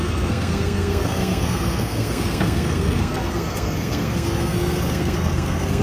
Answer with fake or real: fake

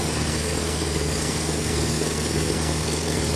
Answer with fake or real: fake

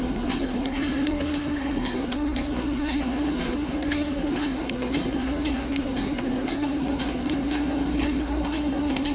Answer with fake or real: fake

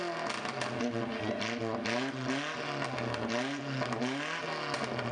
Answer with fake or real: real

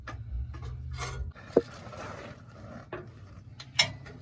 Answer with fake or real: real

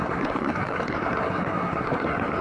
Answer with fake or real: fake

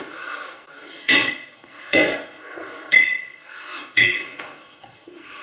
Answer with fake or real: fake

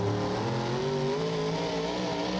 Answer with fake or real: real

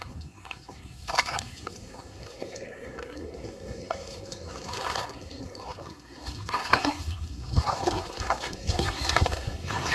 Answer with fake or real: fake